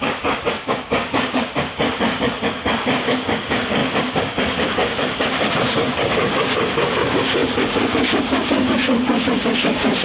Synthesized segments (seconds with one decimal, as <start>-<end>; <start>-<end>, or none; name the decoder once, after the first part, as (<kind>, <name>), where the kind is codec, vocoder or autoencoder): 0.0-10.0 (codec, DAC)